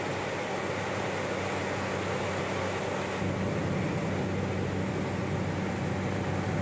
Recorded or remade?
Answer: recorded